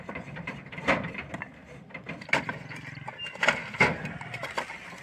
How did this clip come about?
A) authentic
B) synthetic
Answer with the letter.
A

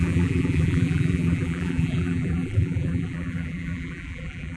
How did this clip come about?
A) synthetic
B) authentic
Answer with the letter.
A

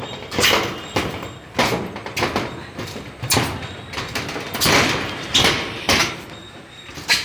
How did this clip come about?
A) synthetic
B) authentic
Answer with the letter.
B